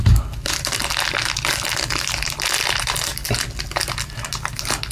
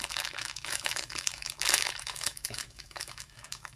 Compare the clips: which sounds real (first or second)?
first